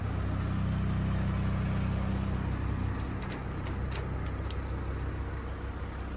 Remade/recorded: recorded